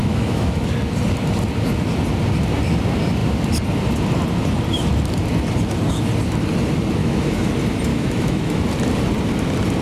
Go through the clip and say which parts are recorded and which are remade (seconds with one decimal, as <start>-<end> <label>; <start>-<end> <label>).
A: 0.0-0.7 remade; 0.7-7.0 recorded; 7.0-7.5 remade; 7.5-7.9 recorded; 7.9-8.6 remade; 8.6-9.8 recorded